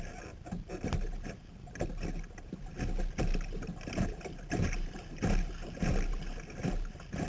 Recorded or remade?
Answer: recorded